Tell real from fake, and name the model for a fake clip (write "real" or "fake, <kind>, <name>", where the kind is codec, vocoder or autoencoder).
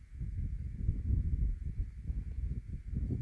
real